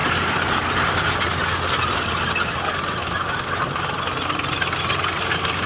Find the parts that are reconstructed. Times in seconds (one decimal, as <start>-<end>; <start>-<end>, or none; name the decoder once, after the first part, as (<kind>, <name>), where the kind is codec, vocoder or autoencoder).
none